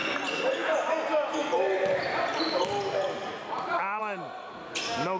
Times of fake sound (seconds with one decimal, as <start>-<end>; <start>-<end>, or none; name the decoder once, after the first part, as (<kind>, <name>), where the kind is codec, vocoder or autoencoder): 0.0-0.9 (vocoder, BigVGAN v2); 1.4-2.1; 3.2-4.0